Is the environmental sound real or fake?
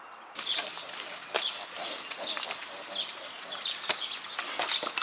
real